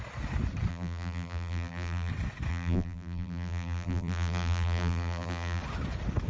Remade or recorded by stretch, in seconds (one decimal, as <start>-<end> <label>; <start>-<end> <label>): 0.0-0.7 recorded; 0.7-2.1 remade; 2.1-2.5 recorded; 2.5-5.6 remade; 5.6-6.3 recorded